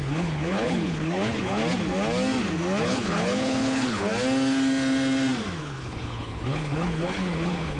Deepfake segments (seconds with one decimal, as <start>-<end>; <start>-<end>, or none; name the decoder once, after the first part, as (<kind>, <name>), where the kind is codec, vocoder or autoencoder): 0.0-1.6 (codec, HILCodec); 2.8-4.1; 5.6-7.8